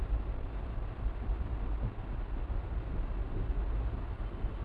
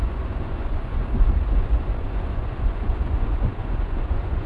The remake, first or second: second